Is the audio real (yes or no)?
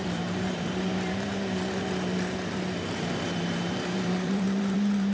no